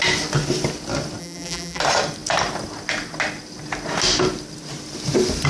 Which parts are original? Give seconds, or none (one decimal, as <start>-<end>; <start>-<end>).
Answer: 0.0-1.2; 1.8-5.5